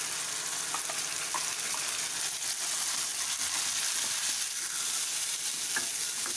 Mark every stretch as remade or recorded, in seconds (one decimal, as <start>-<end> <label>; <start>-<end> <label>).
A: 0.0-3.1 recorded; 3.1-3.6 remade; 3.6-6.4 recorded